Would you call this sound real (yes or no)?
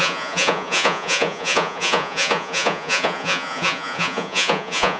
no